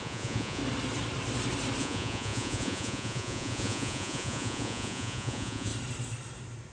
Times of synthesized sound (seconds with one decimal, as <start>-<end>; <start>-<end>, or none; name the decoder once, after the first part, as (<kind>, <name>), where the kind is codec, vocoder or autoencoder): 0.0-0.6 (vocoder, Vocos); 1.8-5.7